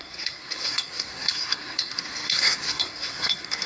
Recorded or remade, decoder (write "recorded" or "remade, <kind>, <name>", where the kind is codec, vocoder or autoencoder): remade, codec, SNAC